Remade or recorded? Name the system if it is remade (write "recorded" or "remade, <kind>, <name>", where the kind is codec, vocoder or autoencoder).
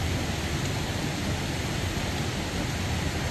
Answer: recorded